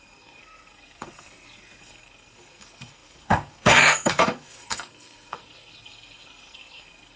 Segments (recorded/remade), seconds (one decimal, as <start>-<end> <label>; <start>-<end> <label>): 0.0-7.2 remade